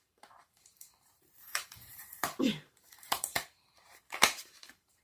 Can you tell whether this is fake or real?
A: fake